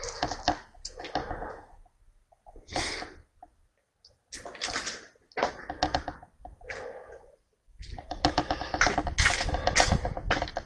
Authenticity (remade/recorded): recorded